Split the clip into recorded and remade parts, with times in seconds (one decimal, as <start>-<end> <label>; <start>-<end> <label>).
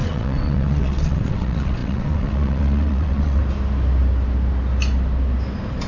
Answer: 0.0-3.4 remade; 3.4-5.9 recorded